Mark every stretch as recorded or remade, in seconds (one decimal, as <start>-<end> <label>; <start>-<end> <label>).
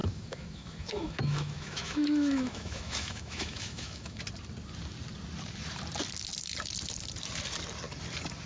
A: 0.0-4.2 remade; 4.2-8.5 recorded